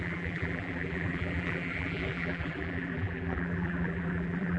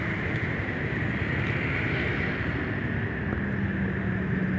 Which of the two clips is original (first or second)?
second